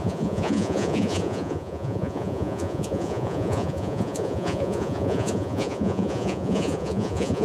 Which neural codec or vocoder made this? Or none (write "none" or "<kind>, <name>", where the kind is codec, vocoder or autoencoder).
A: vocoder, Vocos